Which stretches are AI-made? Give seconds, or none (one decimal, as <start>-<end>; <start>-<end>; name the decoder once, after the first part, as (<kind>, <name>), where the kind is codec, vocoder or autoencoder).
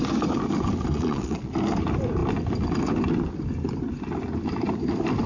0.9-1.5 (vocoder, Vocos)